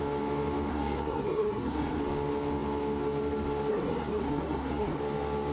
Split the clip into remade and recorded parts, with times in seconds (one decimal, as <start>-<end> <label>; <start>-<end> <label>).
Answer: 0.0-0.7 recorded; 0.7-2.0 remade; 2.0-3.7 recorded; 3.7-5.0 remade; 5.0-5.5 recorded